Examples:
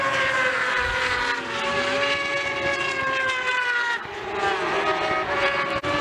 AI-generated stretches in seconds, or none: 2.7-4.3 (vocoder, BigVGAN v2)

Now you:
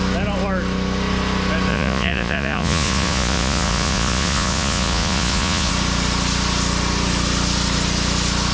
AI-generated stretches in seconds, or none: 1.7-5.7 (vocoder, Vocos)